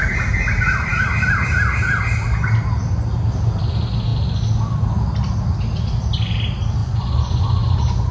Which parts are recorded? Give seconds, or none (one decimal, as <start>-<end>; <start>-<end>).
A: 0.0-6.8